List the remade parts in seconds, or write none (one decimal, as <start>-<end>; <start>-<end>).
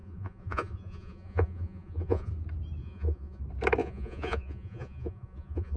0.0-2.3; 2.8-3.4; 3.8-5.8